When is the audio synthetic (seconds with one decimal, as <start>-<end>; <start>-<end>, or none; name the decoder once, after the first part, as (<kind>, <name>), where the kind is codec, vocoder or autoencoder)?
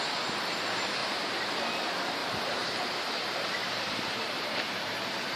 1.0-1.5 (vocoder, BigVGAN v2); 2.2-5.4